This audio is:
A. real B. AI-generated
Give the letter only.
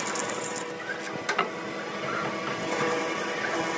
A